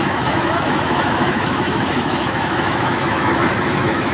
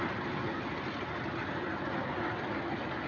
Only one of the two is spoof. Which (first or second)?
first